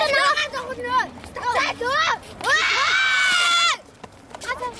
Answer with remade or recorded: remade